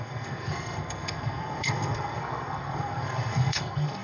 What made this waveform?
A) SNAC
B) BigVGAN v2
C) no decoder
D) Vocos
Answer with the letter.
A